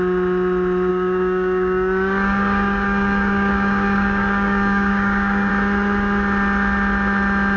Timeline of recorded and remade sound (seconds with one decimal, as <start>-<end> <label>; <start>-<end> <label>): 0.0-0.9 recorded; 0.9-5.5 remade; 5.5-7.6 recorded